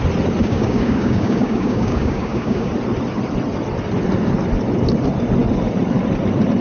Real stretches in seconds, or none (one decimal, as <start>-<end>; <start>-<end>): 0.0-0.4; 2.7-6.6